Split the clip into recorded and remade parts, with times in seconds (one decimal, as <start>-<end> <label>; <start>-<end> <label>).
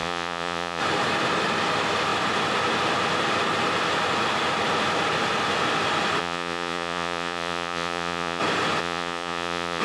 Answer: 0.0-0.8 remade; 0.8-6.2 recorded; 6.2-8.4 remade; 8.4-8.8 recorded; 8.8-9.8 remade